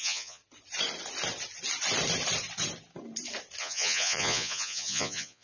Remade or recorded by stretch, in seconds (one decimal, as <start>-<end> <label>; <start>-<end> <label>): 0.0-0.4 remade; 0.4-3.6 recorded; 3.6-5.4 remade